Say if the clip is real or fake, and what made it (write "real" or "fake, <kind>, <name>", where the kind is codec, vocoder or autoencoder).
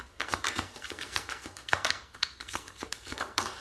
fake, codec, SNAC